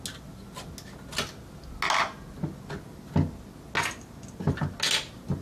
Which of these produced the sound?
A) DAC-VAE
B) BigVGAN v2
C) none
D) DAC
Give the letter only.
C